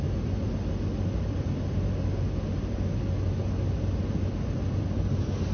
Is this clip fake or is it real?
real